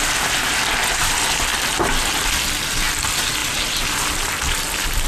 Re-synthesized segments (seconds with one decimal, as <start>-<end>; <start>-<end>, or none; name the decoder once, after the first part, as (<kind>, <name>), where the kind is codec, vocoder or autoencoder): none